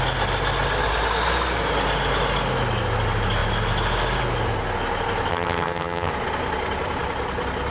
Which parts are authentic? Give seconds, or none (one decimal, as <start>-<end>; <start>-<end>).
0.0-5.3; 6.1-7.7